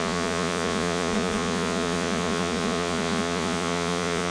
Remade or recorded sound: remade